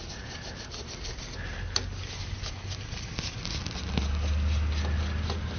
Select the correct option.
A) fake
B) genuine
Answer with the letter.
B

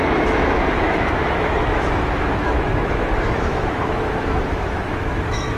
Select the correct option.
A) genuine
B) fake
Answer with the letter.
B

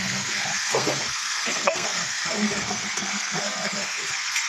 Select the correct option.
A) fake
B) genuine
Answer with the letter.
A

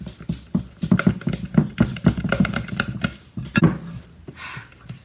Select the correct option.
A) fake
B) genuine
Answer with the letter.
B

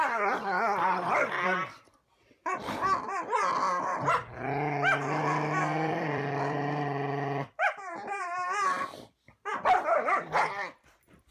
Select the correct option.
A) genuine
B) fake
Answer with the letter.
B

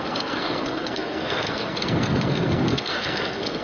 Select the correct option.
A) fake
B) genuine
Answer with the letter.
A